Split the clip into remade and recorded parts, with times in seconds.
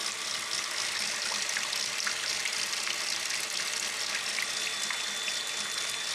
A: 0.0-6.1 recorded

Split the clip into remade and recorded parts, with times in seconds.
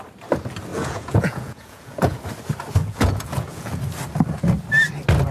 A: 0.0-0.7 recorded; 0.7-2.2 remade; 2.2-2.8 recorded; 2.8-3.8 remade; 3.8-5.3 recorded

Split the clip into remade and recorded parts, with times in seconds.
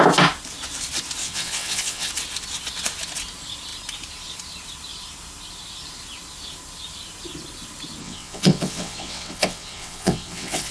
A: 0.0-1.2 recorded; 1.2-2.1 remade; 2.1-8.0 recorded; 8.0-10.7 remade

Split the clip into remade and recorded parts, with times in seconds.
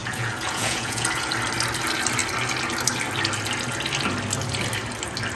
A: 0.0-1.3 remade; 1.3-5.4 recorded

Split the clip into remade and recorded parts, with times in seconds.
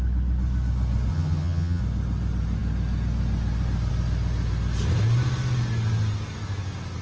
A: 0.0-1.1 recorded; 1.1-1.8 remade; 1.8-7.0 recorded